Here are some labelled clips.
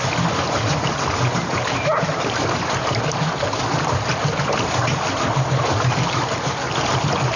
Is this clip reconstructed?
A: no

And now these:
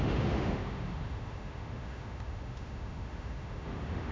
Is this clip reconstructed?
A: yes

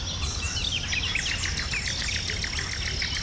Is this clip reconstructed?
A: no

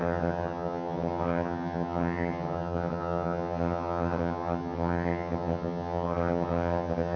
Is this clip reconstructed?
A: yes